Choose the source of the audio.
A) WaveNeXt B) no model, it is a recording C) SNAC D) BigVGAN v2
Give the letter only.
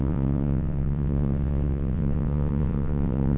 A